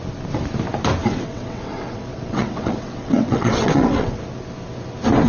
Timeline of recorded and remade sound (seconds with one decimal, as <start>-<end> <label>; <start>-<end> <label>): 0.0-1.0 recorded; 1.0-4.2 remade; 4.2-5.3 recorded